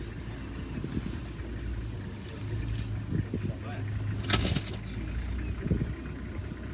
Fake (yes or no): no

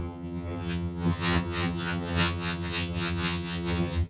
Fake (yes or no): yes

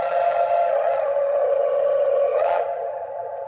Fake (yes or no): yes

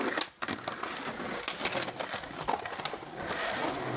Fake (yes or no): no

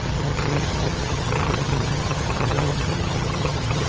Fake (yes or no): yes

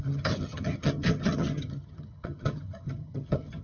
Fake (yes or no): yes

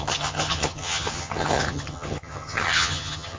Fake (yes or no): yes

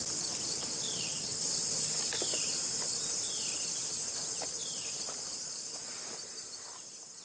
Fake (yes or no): no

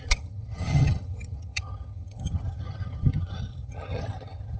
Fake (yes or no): yes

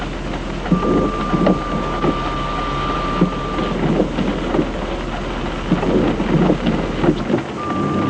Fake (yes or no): no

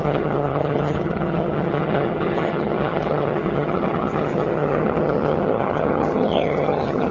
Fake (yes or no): yes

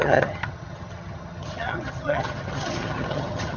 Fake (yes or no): yes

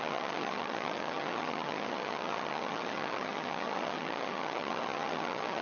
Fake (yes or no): yes